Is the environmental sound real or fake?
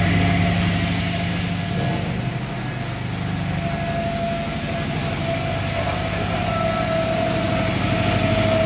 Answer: real